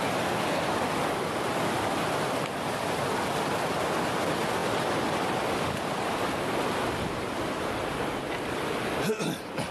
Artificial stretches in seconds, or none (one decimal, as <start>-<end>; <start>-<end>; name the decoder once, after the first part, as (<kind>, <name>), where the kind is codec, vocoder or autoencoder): none